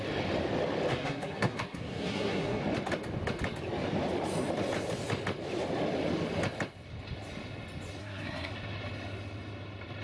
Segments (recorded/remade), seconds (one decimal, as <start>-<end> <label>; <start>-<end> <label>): 0.0-0.9 recorded; 0.9-2.6 remade; 2.6-8.0 recorded; 8.0-8.5 remade; 8.5-10.0 recorded